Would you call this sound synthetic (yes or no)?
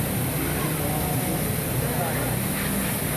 no